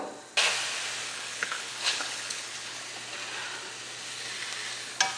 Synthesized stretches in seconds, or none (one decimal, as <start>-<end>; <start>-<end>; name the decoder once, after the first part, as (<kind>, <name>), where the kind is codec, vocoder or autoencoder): 1.1-2.8 (codec, HILCodec)